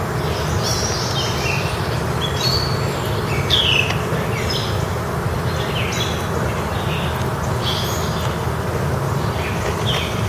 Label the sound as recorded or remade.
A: recorded